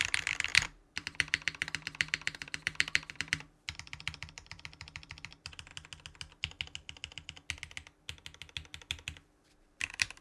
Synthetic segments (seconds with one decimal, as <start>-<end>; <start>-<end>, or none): 0.0-5.7; 9.4-10.2